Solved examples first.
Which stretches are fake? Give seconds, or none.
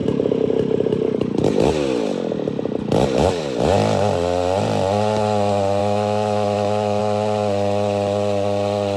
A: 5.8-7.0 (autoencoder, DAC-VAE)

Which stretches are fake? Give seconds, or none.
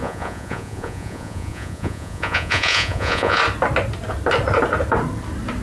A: 0.0-3.4 (vocoder, Vocos)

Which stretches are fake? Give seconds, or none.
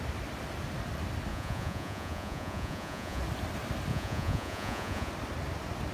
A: 1.3-3.2 (vocoder, Vocos); 3.9-5.1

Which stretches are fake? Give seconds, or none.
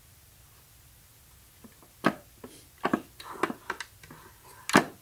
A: none